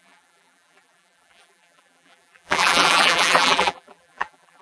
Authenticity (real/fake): fake